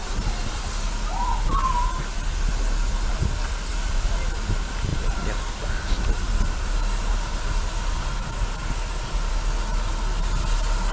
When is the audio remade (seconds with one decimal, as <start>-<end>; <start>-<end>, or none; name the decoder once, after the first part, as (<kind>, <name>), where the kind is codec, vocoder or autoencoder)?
3.7-4.5 (vocoder, BigVGAN v2); 4.9-7.9; 8.6-9.3